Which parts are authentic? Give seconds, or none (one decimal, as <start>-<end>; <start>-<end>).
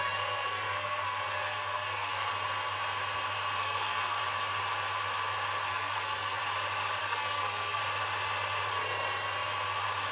2.3-3.6; 4.2-5.7; 6.4-7.0; 7.8-10.1